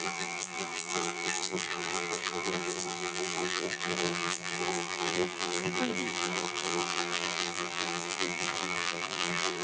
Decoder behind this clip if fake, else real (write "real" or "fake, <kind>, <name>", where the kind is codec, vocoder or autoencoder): fake, vocoder, BigVGAN v2